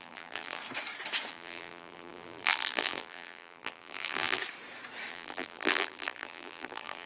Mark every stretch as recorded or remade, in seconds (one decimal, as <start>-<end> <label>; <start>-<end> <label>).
0.0-0.6 remade; 0.6-1.3 recorded; 1.3-4.4 remade; 4.4-5.1 recorded; 5.1-7.1 remade